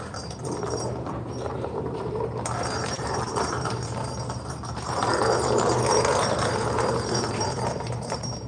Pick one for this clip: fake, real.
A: fake